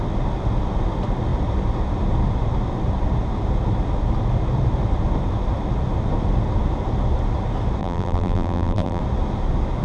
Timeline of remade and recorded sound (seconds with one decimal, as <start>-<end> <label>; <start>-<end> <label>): 0.0-7.8 recorded; 7.8-9.0 remade; 9.0-9.8 recorded

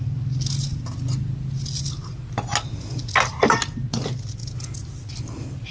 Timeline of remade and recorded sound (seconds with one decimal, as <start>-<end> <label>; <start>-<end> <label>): 0.0-5.7 recorded